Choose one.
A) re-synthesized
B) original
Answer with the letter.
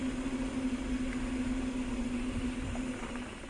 B